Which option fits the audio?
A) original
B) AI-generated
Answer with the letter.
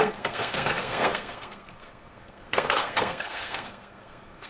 B